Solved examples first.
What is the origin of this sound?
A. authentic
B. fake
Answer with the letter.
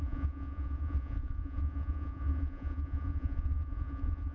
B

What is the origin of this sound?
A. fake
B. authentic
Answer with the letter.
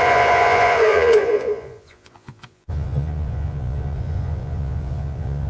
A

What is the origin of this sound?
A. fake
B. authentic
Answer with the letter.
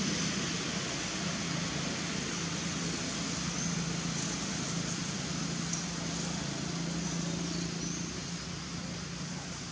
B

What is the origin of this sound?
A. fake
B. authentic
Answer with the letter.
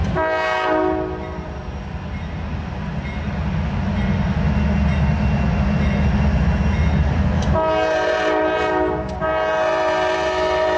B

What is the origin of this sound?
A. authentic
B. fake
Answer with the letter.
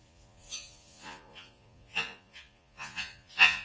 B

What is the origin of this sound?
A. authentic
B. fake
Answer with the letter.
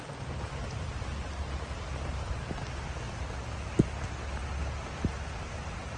A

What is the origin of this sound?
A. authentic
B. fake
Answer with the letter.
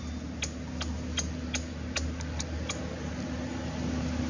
A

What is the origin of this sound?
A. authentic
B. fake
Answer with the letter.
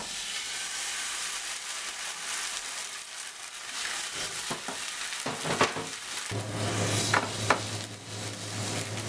A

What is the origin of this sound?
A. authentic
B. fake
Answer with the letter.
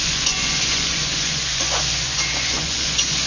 B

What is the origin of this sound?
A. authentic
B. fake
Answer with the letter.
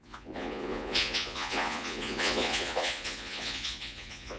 B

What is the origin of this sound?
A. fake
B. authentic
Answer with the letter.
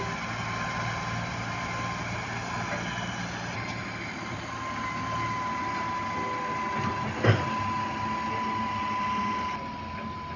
B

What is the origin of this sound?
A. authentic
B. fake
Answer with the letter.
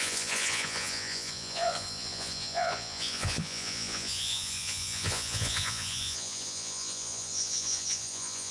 B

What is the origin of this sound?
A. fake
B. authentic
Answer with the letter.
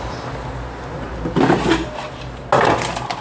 B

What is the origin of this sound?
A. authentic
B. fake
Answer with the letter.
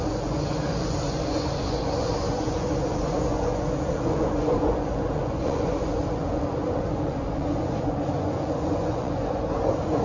B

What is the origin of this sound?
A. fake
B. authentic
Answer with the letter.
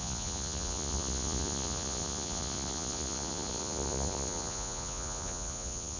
A